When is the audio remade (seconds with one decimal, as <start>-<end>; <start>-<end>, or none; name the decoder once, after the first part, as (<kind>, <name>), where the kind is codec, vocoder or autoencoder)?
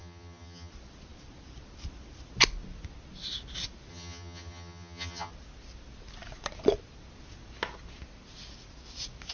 0.0-0.7 (vocoder, HiFi-GAN); 3.9-5.3